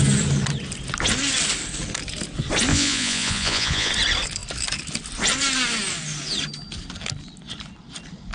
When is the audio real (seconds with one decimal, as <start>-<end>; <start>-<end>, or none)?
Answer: 0.0-2.7; 3.9-8.3